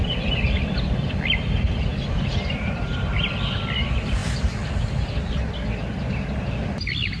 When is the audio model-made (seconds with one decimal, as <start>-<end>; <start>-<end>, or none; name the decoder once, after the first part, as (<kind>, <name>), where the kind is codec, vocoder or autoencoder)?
1.9-3.2 (vocoder, BigVGAN v2)